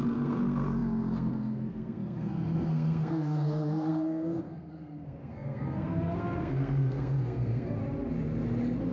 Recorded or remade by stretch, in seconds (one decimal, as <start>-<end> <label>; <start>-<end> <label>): 0.0-7.8 remade; 7.8-8.9 recorded